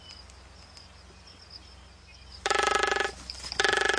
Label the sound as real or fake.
real